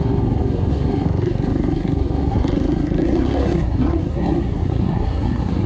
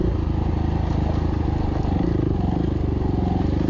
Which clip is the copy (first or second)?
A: first